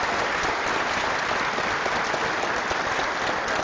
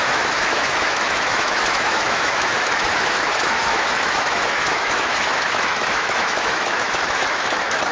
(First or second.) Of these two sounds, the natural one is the first